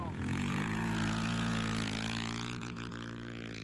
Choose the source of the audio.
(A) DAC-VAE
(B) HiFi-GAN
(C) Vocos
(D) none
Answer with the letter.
C